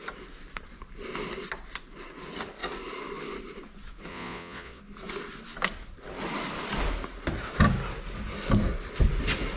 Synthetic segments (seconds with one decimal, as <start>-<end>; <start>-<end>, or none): 4.1-4.8

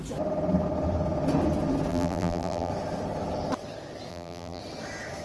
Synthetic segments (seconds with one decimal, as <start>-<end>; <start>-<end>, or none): 1.9-2.7; 4.1-4.6

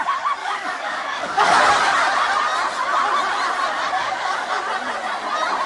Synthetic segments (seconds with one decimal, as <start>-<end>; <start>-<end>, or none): 0.4-1.6; 4.0-4.6

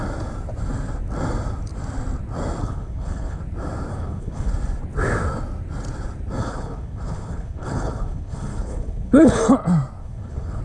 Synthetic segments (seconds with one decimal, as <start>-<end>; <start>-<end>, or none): 2.6-3.4; 3.9-4.5; 6.4-9.4; 10.0-10.6

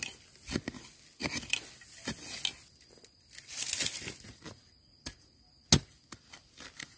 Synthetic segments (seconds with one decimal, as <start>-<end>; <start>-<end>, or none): none

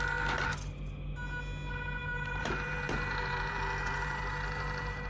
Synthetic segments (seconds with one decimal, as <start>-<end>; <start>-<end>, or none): 2.0-5.1

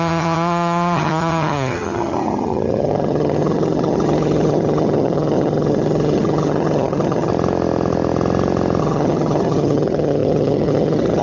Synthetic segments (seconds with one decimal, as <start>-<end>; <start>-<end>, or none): 0.0-7.3; 8.8-11.2